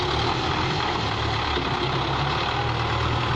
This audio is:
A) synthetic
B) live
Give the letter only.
B